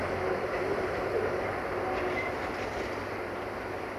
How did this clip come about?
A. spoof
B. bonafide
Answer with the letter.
B